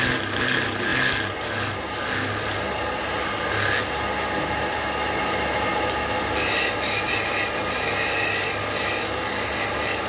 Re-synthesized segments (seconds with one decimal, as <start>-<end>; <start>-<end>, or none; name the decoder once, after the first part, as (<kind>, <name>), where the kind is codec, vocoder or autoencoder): none